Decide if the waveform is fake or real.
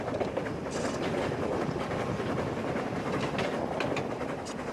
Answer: real